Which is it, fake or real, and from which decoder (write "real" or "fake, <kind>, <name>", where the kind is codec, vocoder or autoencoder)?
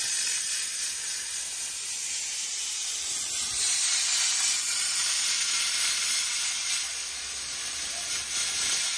real